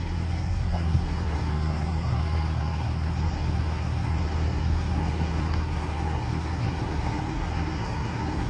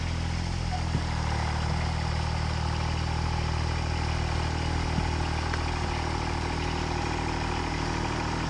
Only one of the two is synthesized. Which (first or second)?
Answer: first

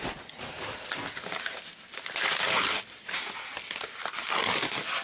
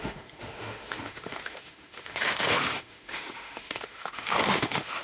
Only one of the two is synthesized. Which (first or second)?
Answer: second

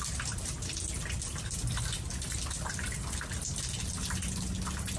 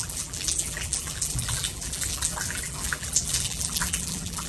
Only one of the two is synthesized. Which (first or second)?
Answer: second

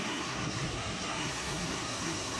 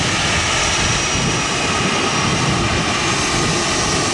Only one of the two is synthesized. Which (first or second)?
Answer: first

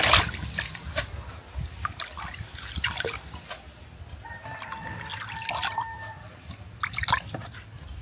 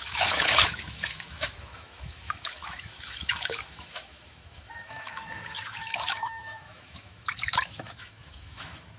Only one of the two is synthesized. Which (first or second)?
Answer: second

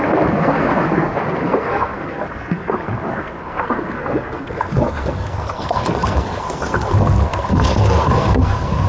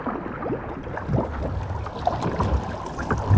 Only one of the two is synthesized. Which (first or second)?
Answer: first